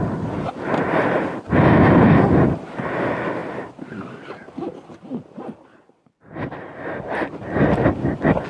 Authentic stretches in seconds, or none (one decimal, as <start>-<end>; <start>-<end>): 0.0-8.5

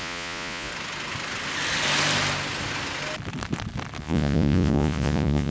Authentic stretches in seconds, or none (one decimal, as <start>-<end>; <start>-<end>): 0.7-4.0

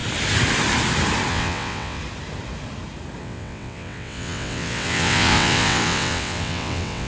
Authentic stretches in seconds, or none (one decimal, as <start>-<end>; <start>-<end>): 0.0-1.3; 2.0-3.2

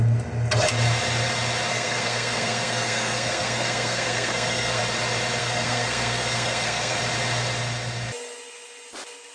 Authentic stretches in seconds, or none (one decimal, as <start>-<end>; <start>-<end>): 0.0-1.7; 4.8-5.4; 7.0-9.3